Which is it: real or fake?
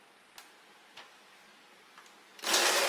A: real